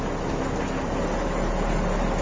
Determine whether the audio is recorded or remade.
recorded